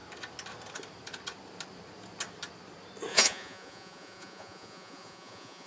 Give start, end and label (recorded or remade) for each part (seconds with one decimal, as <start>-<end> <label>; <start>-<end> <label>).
0.0-3.1 recorded; 3.1-5.7 remade